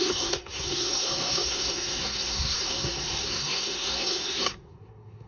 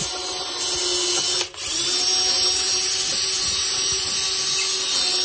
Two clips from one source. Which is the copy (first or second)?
first